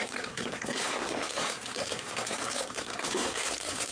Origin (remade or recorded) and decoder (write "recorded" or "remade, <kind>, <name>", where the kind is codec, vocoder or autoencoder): remade, codec, SNAC